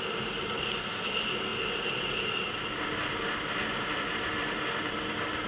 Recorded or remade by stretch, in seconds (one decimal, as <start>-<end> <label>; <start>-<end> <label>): 0.0-5.5 recorded